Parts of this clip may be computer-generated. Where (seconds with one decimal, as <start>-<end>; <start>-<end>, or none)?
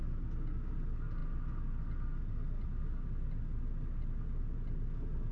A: none